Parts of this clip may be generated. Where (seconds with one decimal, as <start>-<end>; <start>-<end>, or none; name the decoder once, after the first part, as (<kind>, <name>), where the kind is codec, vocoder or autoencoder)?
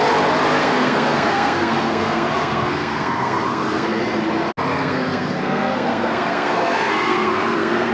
0.6-4.0 (codec, SNAC); 4.7-7.9